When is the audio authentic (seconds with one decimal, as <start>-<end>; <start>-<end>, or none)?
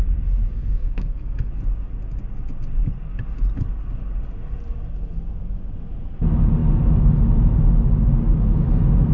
0.0-0.5; 1.5-9.1